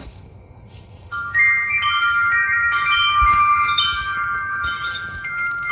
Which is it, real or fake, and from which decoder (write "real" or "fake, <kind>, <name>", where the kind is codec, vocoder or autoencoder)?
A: fake, autoencoder, DAC-VAE